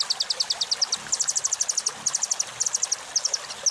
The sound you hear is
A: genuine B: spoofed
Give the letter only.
A